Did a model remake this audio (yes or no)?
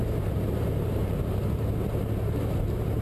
yes